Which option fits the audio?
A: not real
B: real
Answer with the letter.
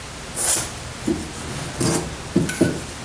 B